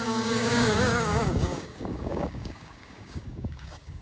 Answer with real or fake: fake